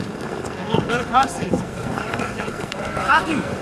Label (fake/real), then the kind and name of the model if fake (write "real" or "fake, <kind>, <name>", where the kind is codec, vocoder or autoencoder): fake, codec, SNAC